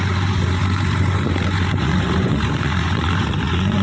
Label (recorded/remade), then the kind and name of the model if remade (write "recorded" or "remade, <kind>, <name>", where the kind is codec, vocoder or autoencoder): remade, vocoder, Vocos